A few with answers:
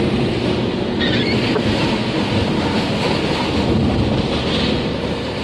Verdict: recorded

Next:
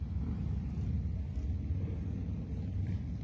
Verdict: recorded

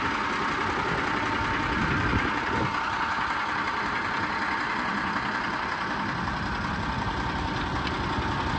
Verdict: recorded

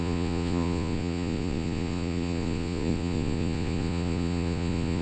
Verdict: remade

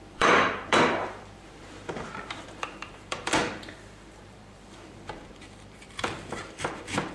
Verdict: remade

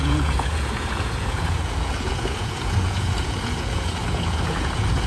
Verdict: remade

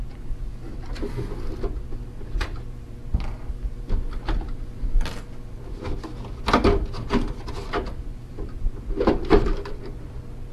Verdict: recorded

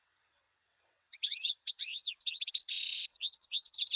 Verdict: remade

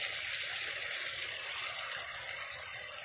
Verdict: recorded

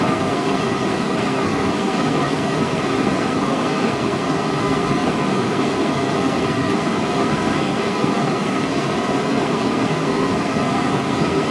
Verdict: remade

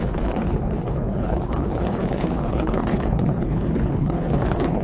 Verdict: remade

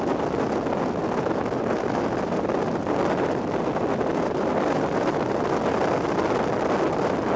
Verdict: recorded